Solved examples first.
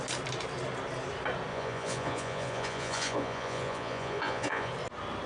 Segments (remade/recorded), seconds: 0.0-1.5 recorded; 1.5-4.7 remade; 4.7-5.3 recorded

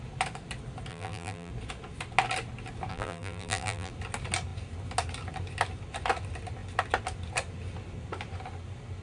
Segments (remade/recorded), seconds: 0.0-0.9 recorded; 0.9-1.5 remade; 1.5-2.9 recorded; 2.9-3.9 remade; 3.9-9.0 recorded

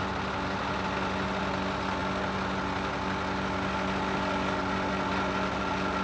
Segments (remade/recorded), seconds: 0.0-6.0 recorded

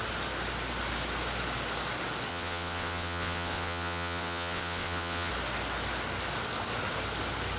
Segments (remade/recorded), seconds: 0.0-2.3 recorded; 2.3-5.3 remade; 5.3-7.6 recorded

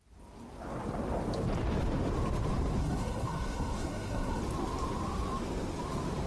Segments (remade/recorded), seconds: 0.0-2.8 recorded; 2.8-4.4 remade; 4.4-6.3 recorded

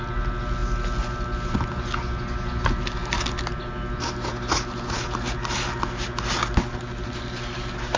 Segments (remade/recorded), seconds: 0.0-8.0 recorded

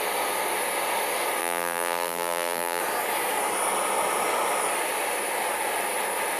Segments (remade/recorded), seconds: 0.0-1.4 recorded; 1.4-2.8 remade; 2.8-6.4 recorded